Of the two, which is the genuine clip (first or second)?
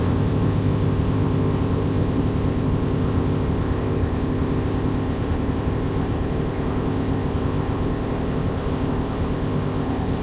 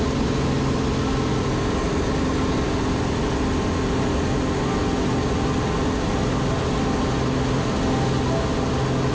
second